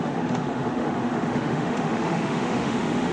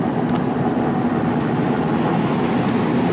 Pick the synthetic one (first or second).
first